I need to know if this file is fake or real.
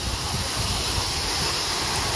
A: real